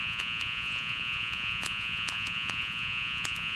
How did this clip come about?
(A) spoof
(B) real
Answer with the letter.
A